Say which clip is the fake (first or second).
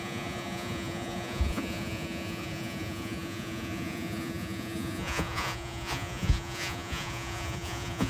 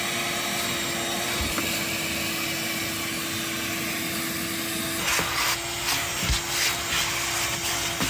first